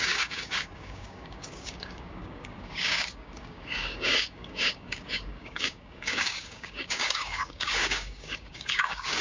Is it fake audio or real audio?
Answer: fake